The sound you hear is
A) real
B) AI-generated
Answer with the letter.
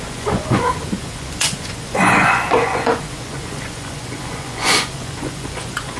B